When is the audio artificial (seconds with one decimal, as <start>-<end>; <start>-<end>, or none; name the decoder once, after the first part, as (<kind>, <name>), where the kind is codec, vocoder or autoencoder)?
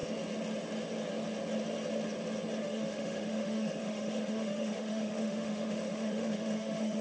2.6-7.0 (autoencoder, DAC-VAE)